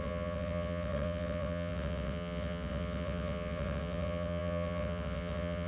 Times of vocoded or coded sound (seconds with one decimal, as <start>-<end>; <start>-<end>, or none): 0.0-5.7

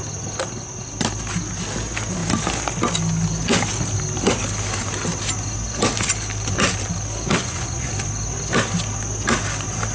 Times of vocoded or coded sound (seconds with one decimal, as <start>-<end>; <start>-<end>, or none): 7.4-7.9

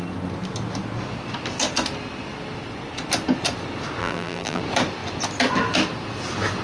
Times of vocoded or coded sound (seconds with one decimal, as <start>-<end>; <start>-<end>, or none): 4.0-4.6

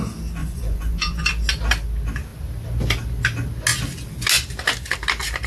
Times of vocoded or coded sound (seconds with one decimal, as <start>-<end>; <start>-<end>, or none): 0.4-1.3

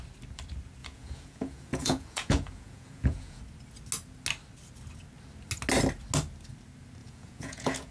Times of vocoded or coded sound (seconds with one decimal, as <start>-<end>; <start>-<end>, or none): 0.8-3.4; 7.0-7.9

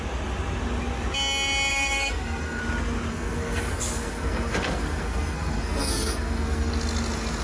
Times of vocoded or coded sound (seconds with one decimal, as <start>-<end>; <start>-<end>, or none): 1.7-2.6; 3.1-6.7

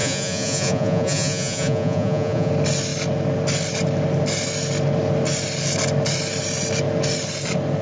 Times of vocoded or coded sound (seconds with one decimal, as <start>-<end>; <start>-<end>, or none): 0.0-2.5